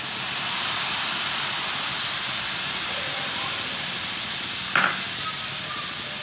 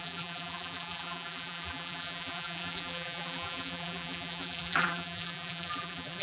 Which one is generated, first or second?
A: second